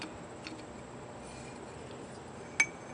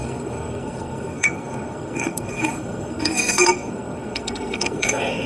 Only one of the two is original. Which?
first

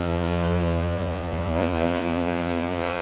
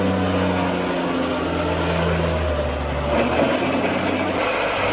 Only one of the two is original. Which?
second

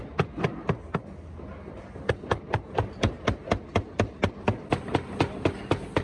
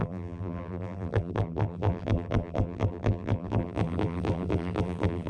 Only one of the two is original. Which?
first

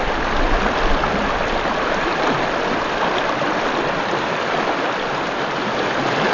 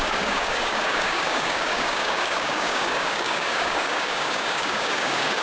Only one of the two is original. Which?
first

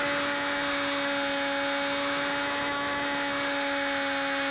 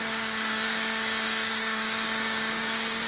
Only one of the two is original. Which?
first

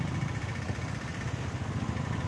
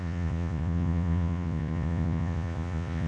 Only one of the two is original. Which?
first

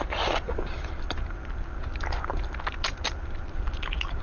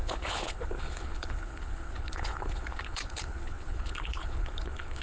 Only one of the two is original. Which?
first